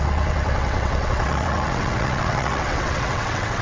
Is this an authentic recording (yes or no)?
no